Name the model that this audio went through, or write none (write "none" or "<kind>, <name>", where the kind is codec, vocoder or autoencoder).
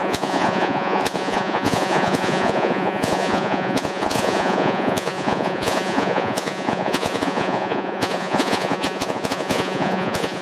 vocoder, Vocos